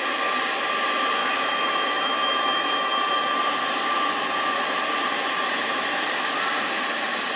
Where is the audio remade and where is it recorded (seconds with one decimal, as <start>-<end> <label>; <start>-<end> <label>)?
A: 0.0-1.2 recorded; 1.2-3.4 remade; 3.4-7.4 recorded